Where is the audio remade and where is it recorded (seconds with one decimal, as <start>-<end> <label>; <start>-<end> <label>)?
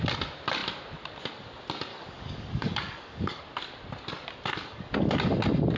0.0-1.9 recorded; 1.9-3.4 remade; 3.4-4.7 recorded; 4.7-5.3 remade; 5.3-5.8 recorded